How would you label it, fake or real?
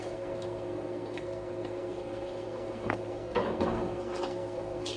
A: fake